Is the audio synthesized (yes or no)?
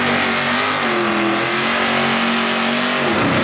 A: no